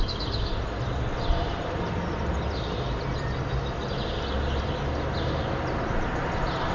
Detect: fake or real real